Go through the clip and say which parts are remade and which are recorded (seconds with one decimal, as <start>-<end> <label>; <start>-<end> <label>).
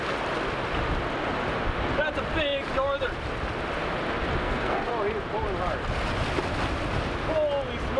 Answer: 0.0-4.4 recorded; 4.4-4.9 remade; 4.9-8.0 recorded